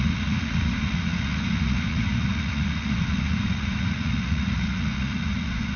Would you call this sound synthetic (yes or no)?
yes